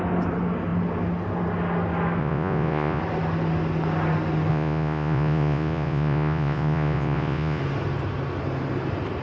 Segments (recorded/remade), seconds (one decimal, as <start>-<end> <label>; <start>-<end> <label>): 0.0-2.2 recorded; 2.2-3.0 remade; 3.0-4.5 recorded; 4.5-7.6 remade; 7.6-9.2 recorded